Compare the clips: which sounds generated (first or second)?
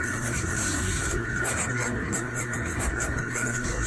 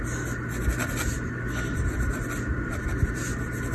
first